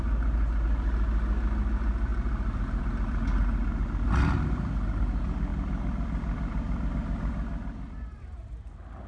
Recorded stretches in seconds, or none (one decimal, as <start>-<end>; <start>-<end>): 0.0-9.1